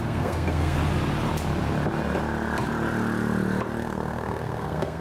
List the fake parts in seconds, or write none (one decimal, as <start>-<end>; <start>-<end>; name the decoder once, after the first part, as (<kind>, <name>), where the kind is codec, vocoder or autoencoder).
0.0-0.8 (codec, SNAC); 3.8-5.0